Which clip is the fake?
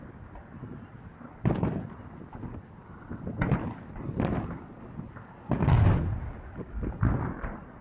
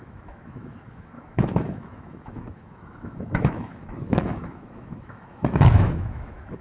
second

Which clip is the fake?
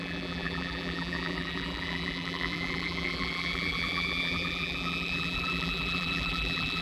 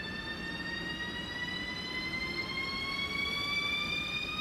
first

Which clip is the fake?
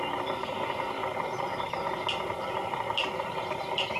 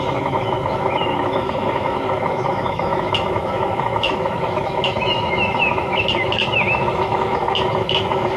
second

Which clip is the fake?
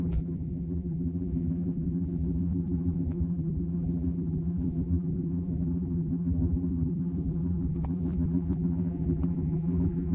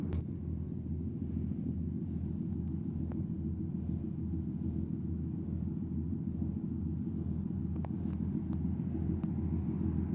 first